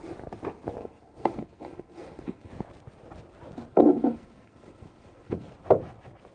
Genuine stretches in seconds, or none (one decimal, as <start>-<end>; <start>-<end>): 0.0-0.8; 2.5-3.7; 5.5-6.3